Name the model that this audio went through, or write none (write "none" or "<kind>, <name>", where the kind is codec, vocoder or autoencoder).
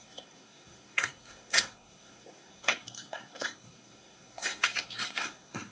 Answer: codec, SNAC